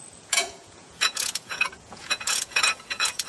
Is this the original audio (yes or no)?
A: no